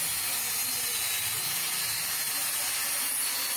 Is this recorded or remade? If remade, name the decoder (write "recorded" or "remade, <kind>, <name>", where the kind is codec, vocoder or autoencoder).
recorded